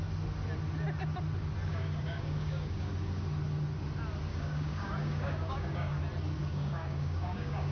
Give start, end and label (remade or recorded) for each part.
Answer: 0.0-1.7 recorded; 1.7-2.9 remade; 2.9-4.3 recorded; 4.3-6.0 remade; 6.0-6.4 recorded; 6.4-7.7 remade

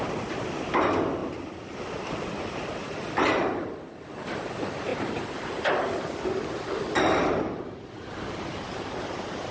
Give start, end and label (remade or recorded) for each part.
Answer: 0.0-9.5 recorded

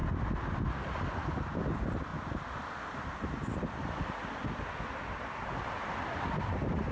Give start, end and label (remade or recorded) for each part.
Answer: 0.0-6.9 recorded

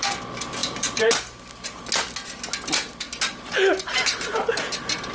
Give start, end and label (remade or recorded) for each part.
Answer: 0.0-5.1 recorded